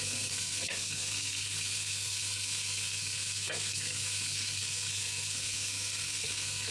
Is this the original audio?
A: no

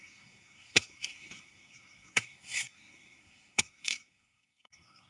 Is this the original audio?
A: no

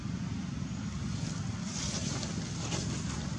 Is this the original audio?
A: yes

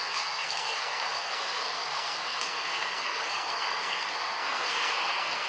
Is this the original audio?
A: no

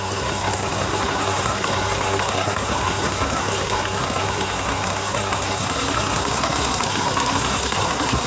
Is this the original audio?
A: no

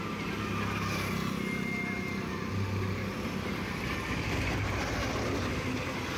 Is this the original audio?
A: yes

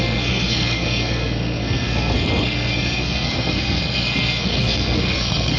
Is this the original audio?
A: no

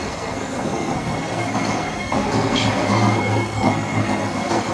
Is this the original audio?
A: no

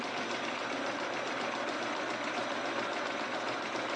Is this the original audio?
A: yes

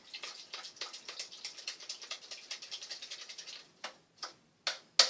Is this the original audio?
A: yes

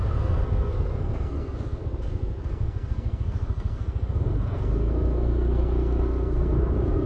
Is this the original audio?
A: no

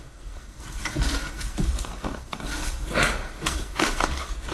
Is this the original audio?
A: no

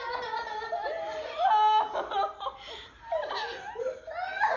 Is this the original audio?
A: yes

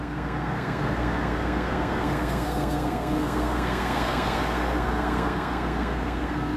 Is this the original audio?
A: no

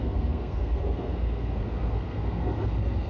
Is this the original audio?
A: no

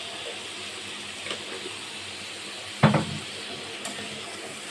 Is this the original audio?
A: yes